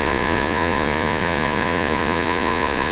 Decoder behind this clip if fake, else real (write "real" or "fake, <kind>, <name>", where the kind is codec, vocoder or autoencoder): fake, vocoder, Vocos